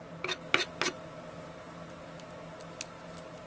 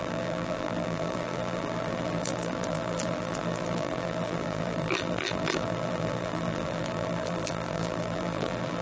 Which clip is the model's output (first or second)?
second